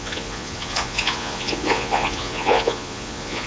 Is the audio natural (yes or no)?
no